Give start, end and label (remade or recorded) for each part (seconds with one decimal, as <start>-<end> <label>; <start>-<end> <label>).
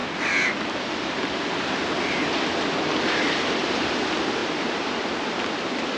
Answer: 0.0-6.0 recorded